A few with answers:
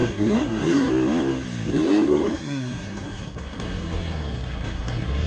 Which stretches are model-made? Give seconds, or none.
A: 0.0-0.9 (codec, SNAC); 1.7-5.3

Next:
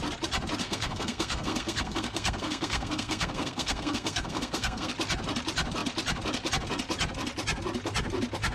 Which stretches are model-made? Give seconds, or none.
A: 0.6-4.9 (codec, SNAC)

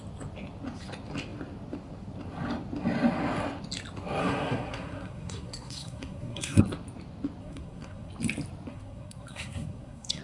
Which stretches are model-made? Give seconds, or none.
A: 4.2-6.6 (codec, SNAC); 7.4-8.1; 8.7-10.2